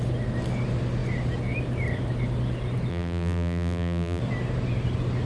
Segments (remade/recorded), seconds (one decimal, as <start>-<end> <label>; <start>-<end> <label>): 0.0-2.9 recorded; 2.9-4.2 remade; 4.2-5.3 recorded